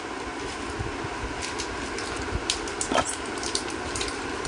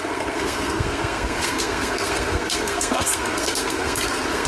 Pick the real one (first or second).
first